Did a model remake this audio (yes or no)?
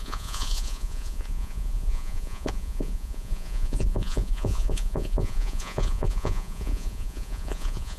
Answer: yes